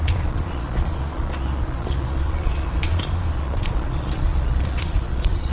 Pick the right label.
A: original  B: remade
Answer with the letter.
B